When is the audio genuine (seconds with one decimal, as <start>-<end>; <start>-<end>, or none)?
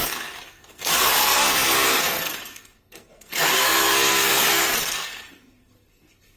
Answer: none